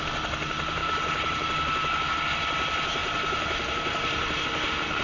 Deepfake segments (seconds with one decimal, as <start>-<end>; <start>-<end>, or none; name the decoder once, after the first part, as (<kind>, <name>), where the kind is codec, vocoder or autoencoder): 0.8-2.1 (vocoder, BigVGAN v2); 3.0-4.4